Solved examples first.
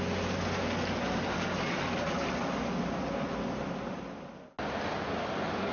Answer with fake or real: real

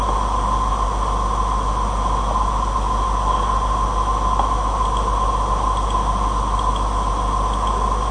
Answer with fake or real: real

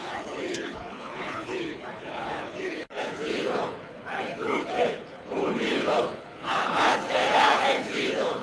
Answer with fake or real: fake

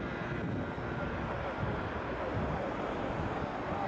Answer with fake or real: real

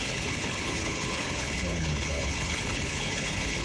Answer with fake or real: fake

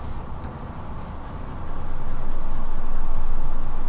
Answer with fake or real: real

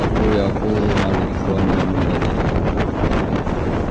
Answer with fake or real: real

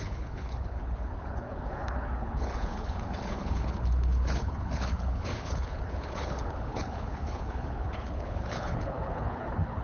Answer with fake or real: fake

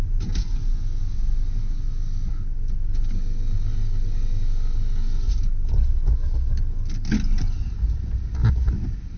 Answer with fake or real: real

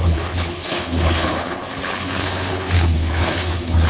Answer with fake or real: fake